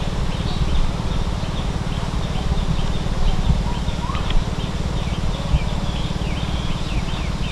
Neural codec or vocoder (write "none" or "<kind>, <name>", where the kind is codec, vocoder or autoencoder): none